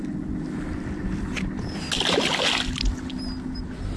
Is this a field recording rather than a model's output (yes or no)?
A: yes